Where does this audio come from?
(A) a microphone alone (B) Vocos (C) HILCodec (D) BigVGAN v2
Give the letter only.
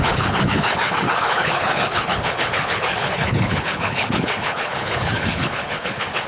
C